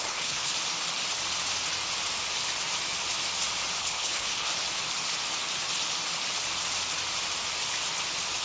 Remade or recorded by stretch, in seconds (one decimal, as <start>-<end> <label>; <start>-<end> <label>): 0.0-0.5 remade; 0.5-3.8 recorded; 3.8-4.5 remade; 4.5-8.4 recorded